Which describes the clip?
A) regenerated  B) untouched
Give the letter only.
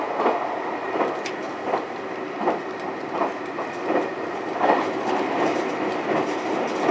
B